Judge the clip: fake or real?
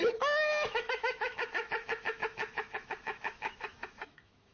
fake